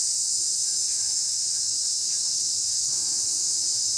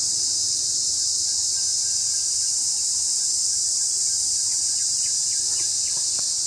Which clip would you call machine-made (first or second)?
first